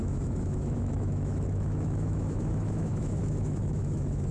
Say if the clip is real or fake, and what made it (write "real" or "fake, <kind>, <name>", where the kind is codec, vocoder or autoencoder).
fake, autoencoder, DAC-VAE